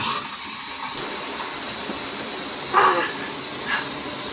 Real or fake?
real